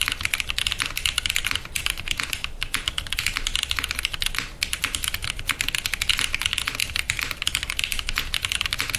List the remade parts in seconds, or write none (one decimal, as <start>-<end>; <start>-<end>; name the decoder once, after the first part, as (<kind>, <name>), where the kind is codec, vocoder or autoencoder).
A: 1.4-3.3 (vocoder, BigVGAN v2); 6.8-7.5